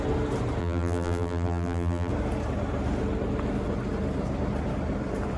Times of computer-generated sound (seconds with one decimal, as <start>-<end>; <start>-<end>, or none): 0.6-2.1